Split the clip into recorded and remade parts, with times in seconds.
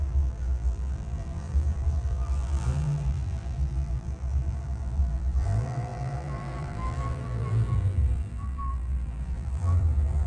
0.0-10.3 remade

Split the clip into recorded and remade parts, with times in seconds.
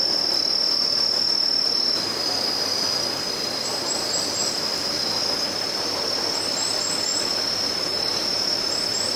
0.0-4.4 recorded; 4.4-5.2 remade; 5.2-9.2 recorded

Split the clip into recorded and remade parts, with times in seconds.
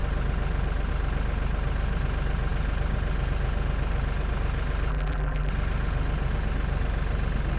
0.0-4.9 recorded; 4.9-5.5 remade; 5.5-7.6 recorded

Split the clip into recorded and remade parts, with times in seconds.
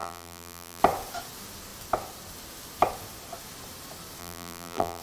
0.0-0.8 remade; 0.8-4.2 recorded; 4.2-5.0 remade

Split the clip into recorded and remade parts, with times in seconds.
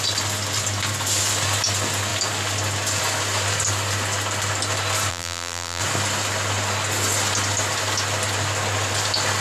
0.0-5.1 recorded; 5.1-5.8 remade; 5.8-9.4 recorded